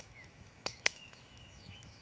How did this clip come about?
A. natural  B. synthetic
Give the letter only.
B